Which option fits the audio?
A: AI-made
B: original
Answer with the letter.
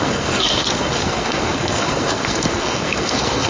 A